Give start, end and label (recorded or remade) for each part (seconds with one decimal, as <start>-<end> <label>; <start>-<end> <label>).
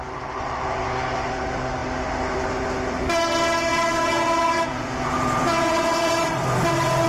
0.0-3.7 recorded; 3.7-6.1 remade; 6.1-7.1 recorded